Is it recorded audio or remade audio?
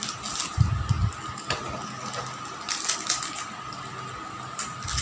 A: recorded